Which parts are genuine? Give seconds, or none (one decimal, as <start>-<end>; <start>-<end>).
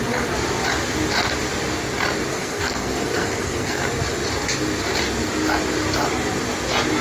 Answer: 0.0-2.3; 3.8-7.0